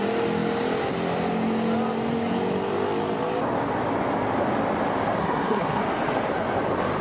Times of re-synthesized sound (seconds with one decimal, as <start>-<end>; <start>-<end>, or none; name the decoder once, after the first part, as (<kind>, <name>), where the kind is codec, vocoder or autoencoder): 5.2-5.8 (codec, SNAC)